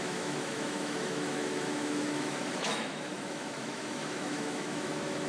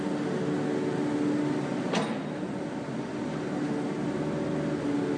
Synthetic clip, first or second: first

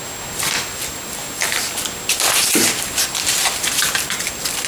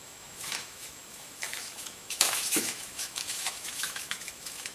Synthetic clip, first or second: second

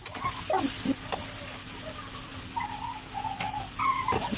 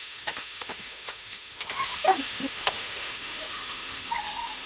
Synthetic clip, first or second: second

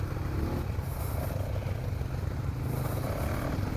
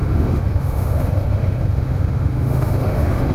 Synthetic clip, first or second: second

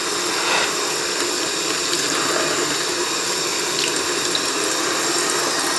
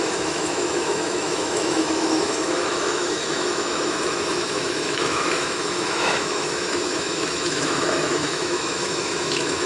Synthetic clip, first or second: second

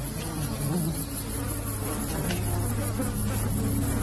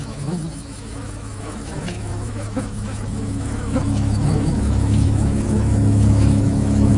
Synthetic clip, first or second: second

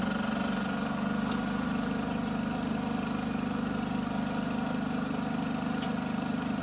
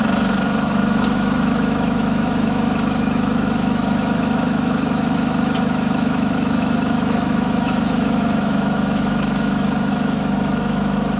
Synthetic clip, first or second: second